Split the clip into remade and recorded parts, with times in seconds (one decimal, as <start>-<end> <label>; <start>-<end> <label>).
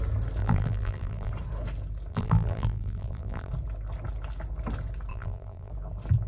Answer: 0.0-0.4 recorded; 0.4-1.3 remade; 1.3-2.1 recorded; 2.1-3.5 remade; 3.5-5.1 recorded; 5.1-5.7 remade; 5.7-6.3 recorded